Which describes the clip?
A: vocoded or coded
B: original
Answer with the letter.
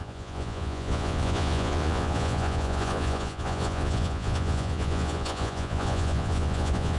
A